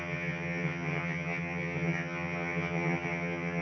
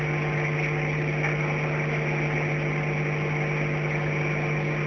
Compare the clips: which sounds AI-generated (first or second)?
first